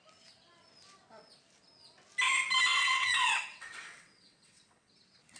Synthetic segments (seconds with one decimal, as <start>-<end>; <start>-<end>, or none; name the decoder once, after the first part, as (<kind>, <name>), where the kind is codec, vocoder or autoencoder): 2.7-4.9 (vocoder, WaveNeXt)